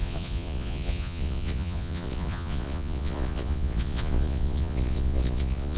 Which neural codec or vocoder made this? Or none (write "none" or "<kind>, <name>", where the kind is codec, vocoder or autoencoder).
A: vocoder, Vocos